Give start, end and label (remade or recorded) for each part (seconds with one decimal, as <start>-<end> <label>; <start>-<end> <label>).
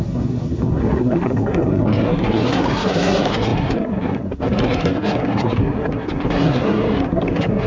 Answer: 0.0-7.7 remade